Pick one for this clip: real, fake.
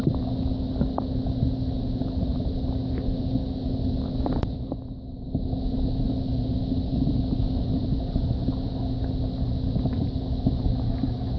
real